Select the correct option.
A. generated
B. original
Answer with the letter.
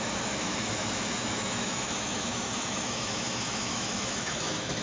A